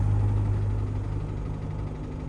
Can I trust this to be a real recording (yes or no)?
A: yes